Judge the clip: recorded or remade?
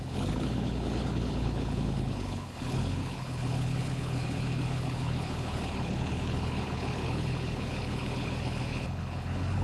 remade